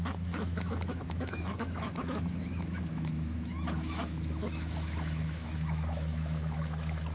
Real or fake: fake